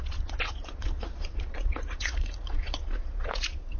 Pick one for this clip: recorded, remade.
remade